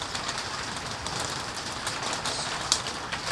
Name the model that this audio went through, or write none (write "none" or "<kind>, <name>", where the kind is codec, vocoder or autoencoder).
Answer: none